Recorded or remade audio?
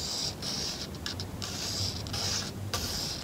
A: recorded